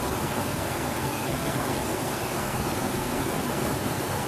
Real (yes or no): no